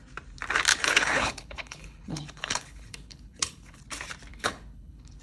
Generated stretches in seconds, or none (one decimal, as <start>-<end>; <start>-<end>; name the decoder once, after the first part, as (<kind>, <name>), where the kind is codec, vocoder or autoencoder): 0.7-3.8 (codec, HILCodec); 4.3-5.2